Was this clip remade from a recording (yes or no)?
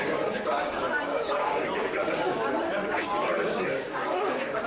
yes